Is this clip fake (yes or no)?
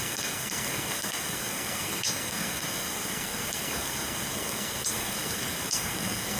yes